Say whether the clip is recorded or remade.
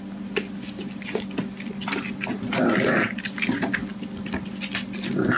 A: recorded